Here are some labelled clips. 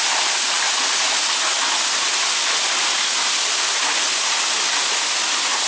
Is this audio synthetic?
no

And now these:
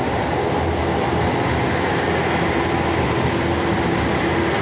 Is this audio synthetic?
no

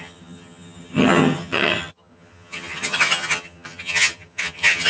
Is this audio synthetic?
yes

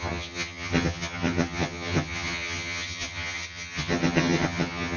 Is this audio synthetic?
yes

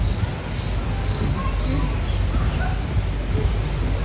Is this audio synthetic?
no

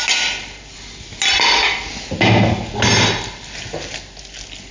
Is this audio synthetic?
no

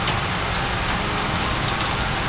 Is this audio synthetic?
no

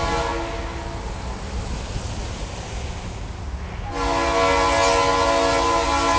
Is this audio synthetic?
no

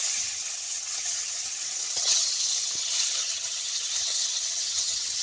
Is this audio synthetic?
yes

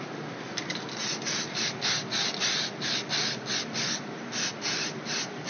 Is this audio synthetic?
no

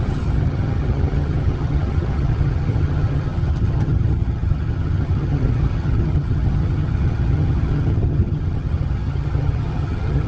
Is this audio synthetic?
yes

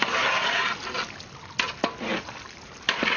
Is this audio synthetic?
no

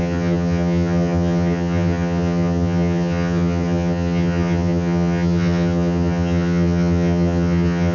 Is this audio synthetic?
yes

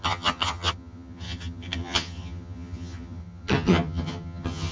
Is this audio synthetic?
yes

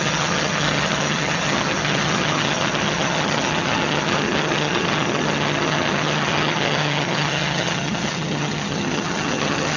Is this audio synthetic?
yes